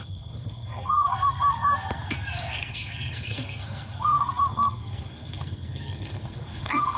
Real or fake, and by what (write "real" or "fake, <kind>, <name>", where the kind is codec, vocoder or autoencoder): fake, codec, SNAC